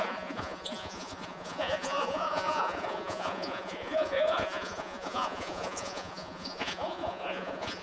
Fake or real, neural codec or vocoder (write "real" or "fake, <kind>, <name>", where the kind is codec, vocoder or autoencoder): fake, vocoder, Vocos